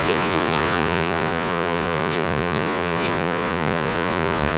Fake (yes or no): yes